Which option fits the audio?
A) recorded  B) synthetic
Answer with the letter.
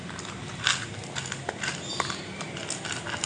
A